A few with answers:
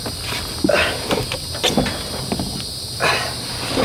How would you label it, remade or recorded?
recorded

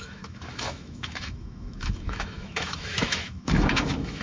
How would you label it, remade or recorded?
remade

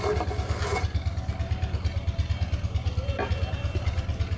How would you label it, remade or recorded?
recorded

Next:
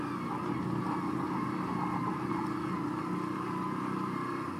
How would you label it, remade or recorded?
recorded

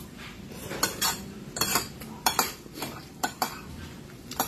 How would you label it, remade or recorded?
remade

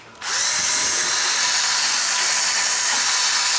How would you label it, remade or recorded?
recorded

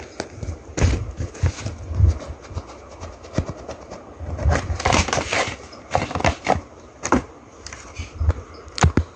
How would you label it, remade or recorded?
recorded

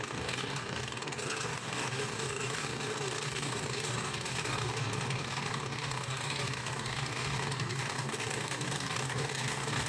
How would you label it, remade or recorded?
remade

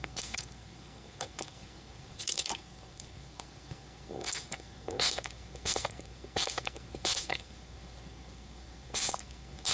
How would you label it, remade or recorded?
remade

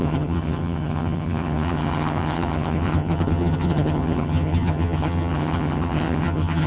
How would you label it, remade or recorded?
remade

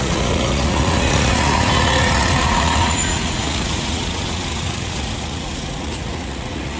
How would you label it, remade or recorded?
remade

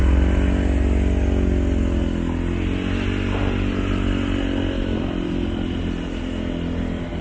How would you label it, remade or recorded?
recorded